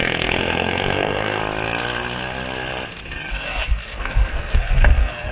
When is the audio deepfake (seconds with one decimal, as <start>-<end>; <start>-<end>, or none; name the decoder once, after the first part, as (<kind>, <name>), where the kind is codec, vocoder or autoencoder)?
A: 0.0-1.4 (codec, SNAC); 3.3-5.3